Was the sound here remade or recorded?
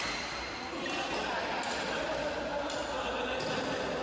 recorded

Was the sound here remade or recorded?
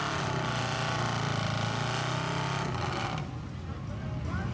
recorded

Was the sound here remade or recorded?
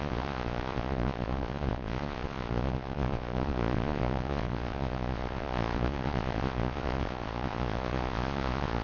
remade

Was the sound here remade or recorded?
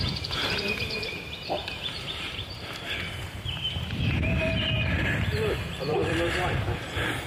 remade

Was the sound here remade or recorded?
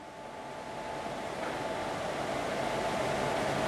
recorded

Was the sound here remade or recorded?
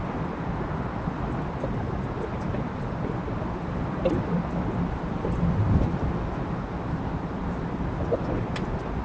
recorded